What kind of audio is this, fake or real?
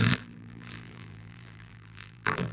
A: fake